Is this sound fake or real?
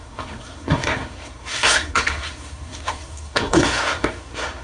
fake